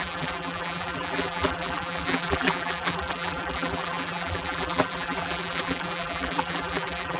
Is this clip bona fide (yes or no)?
no